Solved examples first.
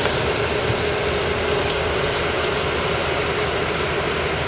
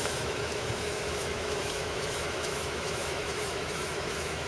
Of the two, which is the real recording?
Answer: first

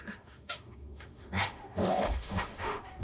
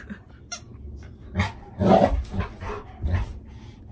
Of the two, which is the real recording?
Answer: second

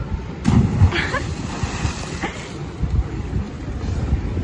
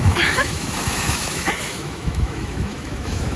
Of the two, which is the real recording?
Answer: first